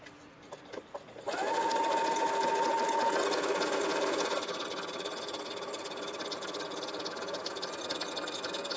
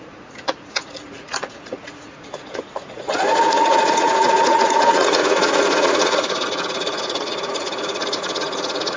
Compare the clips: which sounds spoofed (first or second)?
second